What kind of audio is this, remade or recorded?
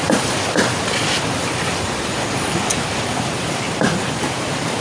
remade